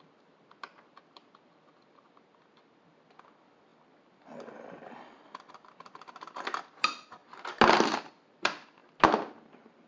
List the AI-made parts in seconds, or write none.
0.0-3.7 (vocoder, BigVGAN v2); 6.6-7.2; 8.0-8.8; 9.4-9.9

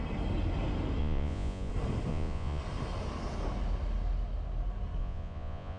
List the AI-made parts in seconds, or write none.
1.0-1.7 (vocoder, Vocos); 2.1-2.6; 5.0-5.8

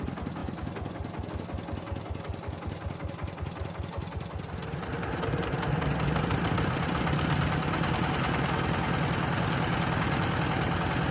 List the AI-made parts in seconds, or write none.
none

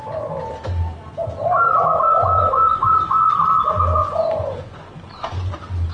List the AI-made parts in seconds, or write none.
1.9-3.0 (vocoder, Vocos); 4.0-5.5